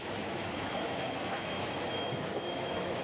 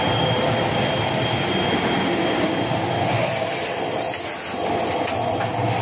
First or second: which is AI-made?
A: first